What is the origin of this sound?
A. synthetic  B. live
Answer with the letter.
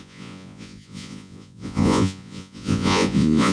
A